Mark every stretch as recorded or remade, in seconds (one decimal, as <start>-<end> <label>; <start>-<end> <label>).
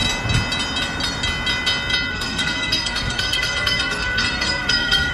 0.0-2.1 recorded; 2.1-5.1 remade